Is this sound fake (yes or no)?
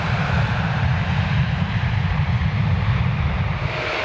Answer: yes